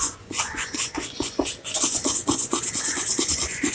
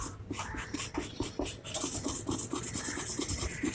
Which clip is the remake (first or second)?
first